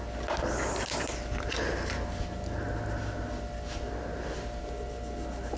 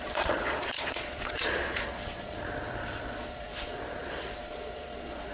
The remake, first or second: second